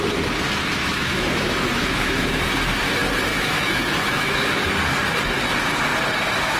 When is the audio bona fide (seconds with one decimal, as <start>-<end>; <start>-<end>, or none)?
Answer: 0.0-0.8; 2.4-3.3; 4.7-6.6

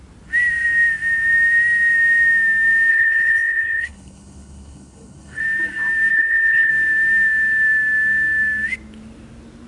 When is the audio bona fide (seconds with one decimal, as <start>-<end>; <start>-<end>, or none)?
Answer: 0.0-2.9; 5.4-6.1; 6.7-9.7

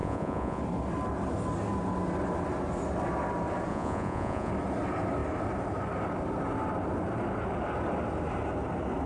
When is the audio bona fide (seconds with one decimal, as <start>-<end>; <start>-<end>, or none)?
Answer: 0.6-3.7; 4.5-9.1

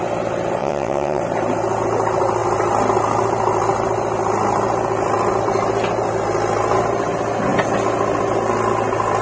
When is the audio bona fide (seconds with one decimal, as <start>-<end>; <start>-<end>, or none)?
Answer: 0.0-0.6; 1.2-9.2

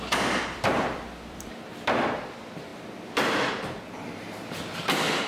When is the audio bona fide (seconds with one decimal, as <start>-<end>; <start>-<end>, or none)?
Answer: 2.7-3.8

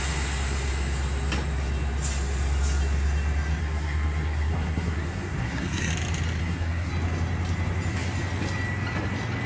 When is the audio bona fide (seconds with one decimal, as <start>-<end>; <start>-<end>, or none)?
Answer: 0.0-3.6; 5.9-6.4; 6.9-9.5

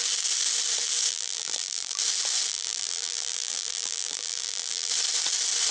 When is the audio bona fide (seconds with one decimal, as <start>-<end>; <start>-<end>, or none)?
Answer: 0.0-1.1; 2.0-2.5; 4.9-5.7